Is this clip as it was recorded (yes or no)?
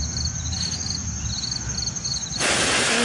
yes